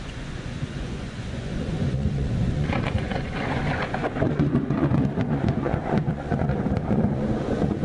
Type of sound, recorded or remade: remade